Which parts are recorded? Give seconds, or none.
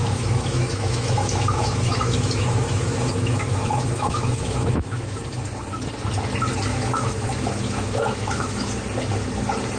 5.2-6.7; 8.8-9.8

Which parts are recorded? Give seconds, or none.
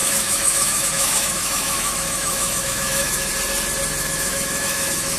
3.3-4.0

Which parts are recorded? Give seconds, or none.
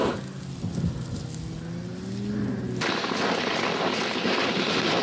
0.0-5.0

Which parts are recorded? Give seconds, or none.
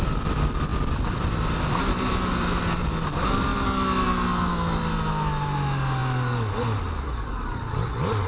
0.0-8.3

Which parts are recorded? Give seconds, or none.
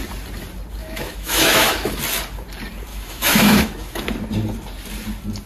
0.0-0.8; 2.0-2.9; 4.0-5.5